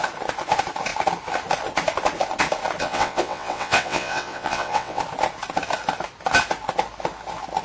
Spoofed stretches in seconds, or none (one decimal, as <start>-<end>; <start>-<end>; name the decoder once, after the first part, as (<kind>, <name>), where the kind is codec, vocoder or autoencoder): 2.8-5.0 (vocoder, WaveNeXt)